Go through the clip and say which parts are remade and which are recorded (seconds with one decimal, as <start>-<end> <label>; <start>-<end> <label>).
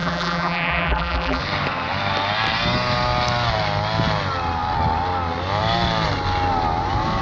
0.0-1.4 remade; 1.4-7.2 recorded